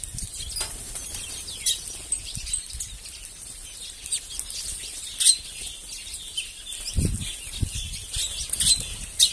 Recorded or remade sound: recorded